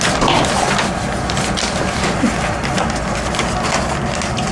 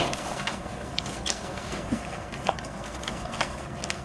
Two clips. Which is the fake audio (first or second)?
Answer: second